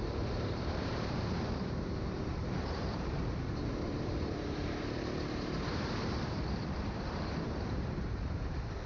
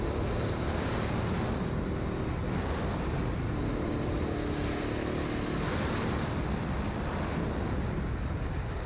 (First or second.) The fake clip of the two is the first